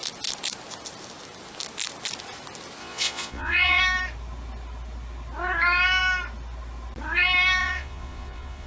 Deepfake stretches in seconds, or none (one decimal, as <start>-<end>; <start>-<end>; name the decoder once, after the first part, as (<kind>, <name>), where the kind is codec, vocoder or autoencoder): 2.8-3.8 (vocoder, Vocos); 7.6-8.7